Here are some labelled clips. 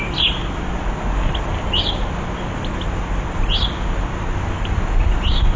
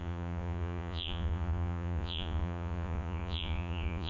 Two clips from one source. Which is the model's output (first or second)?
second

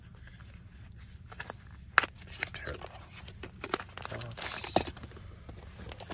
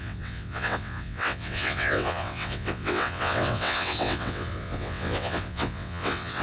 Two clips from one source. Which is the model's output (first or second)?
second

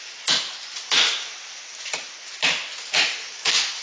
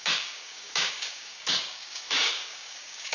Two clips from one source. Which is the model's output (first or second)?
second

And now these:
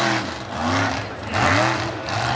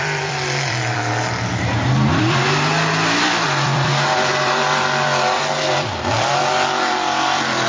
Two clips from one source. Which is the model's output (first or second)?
second